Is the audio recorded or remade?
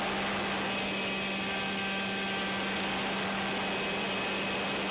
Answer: recorded